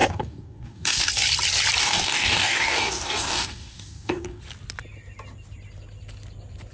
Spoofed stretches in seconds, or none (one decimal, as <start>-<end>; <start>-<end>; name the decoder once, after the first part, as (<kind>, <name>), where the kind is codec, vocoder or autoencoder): 0.0-1.1 (codec, DAC); 1.8-4.4